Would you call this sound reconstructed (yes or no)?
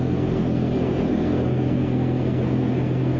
yes